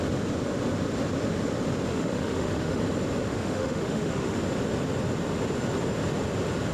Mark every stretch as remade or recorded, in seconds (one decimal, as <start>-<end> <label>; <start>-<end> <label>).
0.0-1.9 recorded; 1.9-2.8 remade; 2.8-3.3 recorded; 3.3-4.4 remade; 4.4-6.7 recorded